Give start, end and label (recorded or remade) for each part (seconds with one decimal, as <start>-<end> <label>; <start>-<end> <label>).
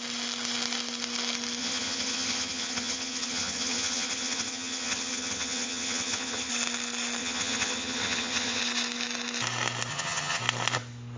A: 0.0-1.6 recorded; 1.6-6.5 remade; 6.5-7.2 recorded; 7.2-8.6 remade; 8.6-9.9 recorded; 9.9-10.4 remade; 10.4-11.2 recorded